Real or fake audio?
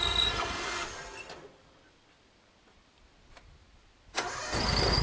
real